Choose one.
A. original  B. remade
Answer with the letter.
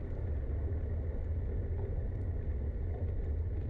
A